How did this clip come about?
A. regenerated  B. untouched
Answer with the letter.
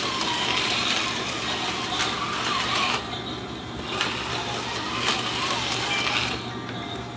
B